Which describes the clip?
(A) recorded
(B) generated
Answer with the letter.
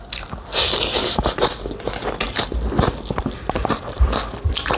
B